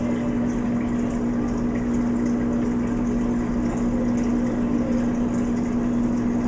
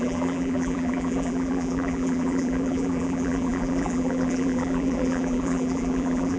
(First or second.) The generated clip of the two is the second